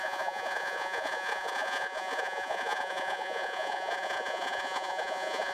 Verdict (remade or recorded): remade